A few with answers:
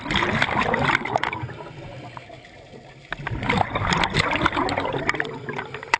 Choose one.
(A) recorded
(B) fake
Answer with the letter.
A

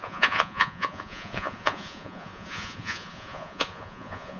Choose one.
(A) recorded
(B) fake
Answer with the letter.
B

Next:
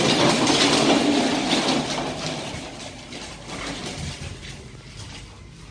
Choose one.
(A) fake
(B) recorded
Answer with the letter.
B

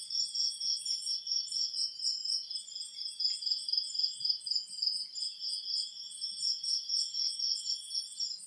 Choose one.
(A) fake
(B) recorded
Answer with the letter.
A